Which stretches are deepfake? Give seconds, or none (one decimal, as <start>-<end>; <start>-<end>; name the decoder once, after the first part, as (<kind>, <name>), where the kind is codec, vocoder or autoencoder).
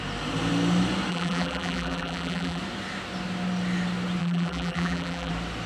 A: 1.1-2.6 (vocoder, BigVGAN v2); 4.2-5.3